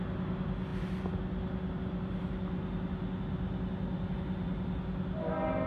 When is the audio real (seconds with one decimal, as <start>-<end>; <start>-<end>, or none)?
0.0-5.7